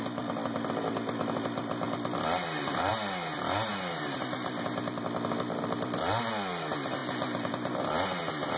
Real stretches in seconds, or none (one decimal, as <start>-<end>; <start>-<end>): 0.0-8.6